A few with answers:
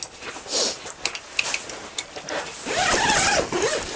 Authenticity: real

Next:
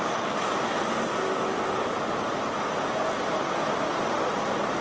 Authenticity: fake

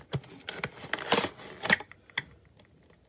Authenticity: real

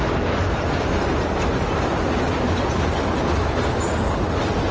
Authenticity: real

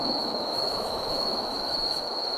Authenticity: fake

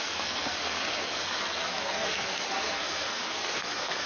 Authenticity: fake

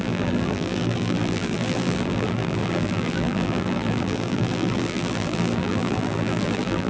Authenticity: fake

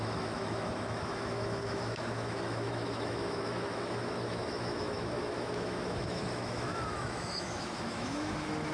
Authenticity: fake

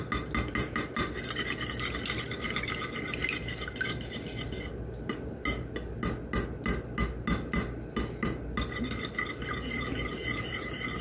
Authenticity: real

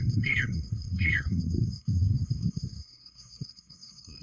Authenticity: fake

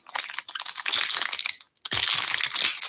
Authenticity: real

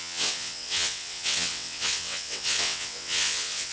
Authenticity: fake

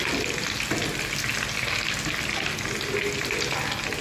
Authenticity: real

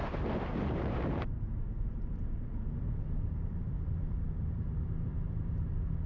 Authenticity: fake